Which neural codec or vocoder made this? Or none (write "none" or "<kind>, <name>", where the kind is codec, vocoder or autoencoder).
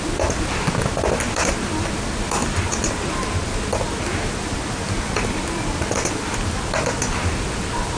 none